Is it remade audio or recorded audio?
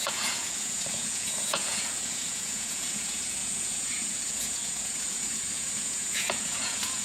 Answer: remade